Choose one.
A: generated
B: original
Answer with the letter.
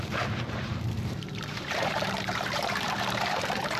A